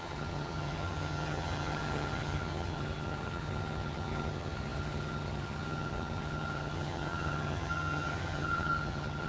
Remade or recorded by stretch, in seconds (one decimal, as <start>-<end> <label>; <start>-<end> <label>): 0.0-9.3 remade